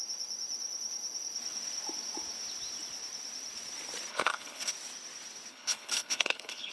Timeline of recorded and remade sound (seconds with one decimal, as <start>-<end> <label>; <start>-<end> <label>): 0.0-4.1 recorded; 4.1-4.7 remade; 4.7-5.5 recorded; 5.5-6.7 remade